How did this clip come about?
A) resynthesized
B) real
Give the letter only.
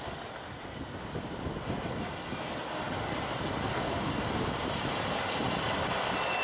B